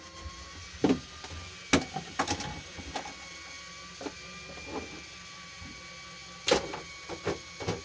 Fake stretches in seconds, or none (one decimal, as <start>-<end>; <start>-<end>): none